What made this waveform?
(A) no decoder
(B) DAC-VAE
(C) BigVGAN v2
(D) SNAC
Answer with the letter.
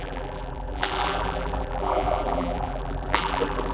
C